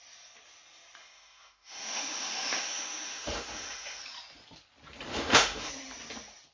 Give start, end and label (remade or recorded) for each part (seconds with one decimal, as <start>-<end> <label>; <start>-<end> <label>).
0.0-1.0 recorded; 1.0-4.0 remade; 4.0-5.1 recorded; 5.1-5.7 remade; 5.7-6.5 recorded

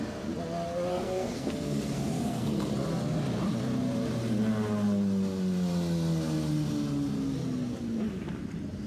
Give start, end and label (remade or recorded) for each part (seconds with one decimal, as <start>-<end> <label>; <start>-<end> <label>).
0.0-0.9 recorded; 0.9-2.7 remade; 2.7-8.9 recorded

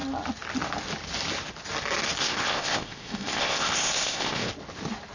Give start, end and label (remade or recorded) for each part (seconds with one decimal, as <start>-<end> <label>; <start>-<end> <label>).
0.0-2.2 recorded; 2.2-4.5 remade; 4.5-5.1 recorded